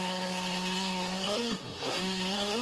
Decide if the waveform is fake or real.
fake